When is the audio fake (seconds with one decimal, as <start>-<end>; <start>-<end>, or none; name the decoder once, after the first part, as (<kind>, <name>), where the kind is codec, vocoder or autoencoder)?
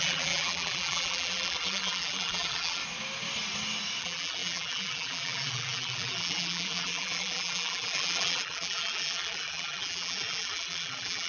0.0-2.8 (vocoder, BigVGAN v2); 4.0-11.3